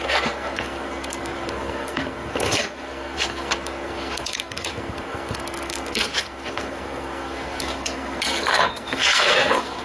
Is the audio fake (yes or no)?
yes